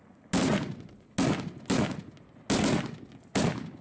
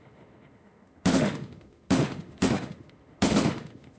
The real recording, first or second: first